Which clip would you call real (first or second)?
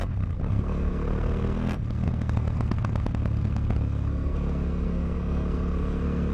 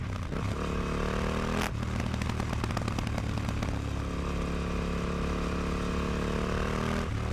second